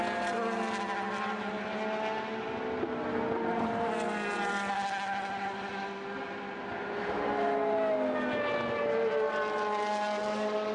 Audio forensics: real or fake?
real